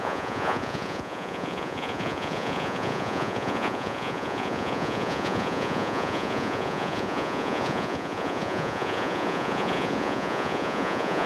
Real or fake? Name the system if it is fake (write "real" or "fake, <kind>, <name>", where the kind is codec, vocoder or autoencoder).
fake, vocoder, Vocos